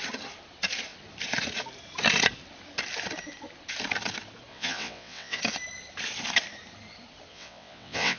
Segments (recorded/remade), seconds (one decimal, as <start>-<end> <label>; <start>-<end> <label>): 0.0-4.5 recorded; 4.5-5.4 remade; 5.4-7.3 recorded; 7.3-8.2 remade